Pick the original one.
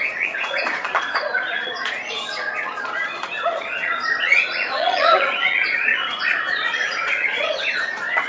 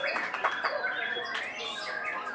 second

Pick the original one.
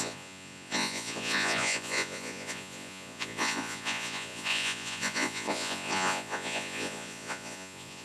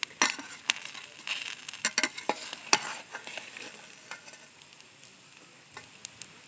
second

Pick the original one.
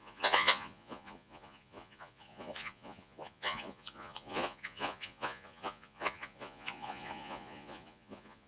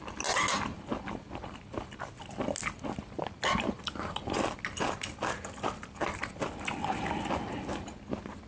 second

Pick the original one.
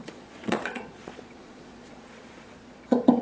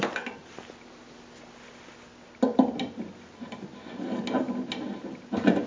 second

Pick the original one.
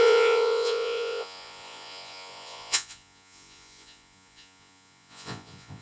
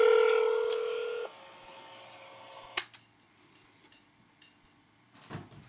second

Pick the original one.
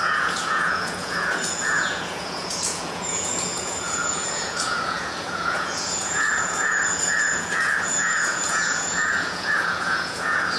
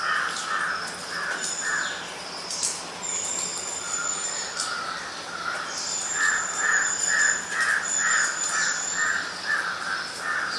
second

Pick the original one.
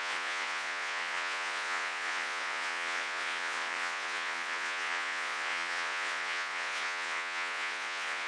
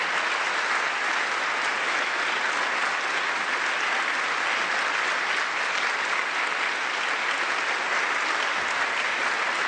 second